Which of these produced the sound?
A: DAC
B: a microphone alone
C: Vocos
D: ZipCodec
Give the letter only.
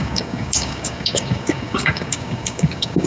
A